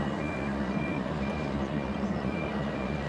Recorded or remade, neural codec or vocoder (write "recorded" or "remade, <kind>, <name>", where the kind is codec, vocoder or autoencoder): remade, vocoder, Vocos